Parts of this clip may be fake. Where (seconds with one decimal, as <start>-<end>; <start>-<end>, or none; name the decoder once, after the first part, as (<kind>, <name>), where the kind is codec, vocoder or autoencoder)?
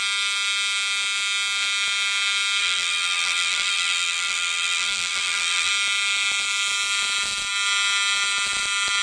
2.6-5.7 (vocoder, BigVGAN v2)